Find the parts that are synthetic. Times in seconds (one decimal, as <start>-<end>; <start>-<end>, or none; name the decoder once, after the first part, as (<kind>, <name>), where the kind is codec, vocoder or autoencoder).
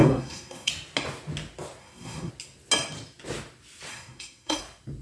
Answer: 0.0-0.7 (codec, SNAC); 1.8-2.3; 3.9-4.6